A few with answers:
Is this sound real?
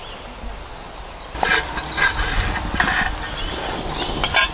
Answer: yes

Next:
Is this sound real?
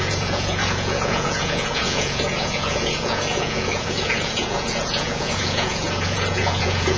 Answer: no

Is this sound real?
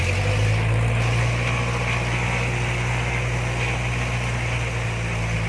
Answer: yes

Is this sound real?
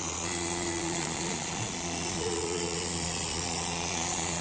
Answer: no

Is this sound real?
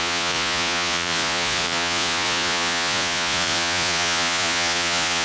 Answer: no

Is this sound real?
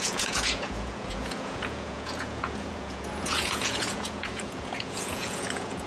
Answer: no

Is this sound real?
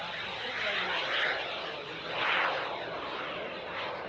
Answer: yes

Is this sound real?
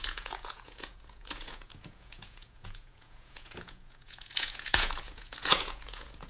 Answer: no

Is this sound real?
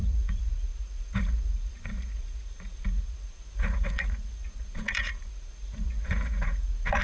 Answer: no